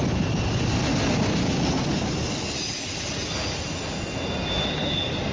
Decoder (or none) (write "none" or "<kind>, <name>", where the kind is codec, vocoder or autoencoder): none